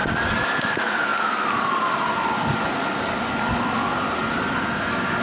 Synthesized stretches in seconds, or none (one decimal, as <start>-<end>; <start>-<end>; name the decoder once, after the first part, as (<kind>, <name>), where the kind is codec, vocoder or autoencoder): none